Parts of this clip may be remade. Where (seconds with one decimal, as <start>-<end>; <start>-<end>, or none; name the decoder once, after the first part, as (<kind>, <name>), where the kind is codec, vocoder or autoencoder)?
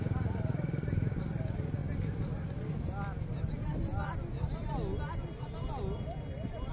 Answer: none